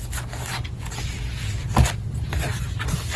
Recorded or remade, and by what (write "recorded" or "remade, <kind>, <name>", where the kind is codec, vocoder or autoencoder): recorded